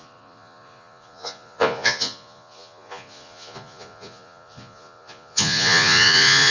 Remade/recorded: remade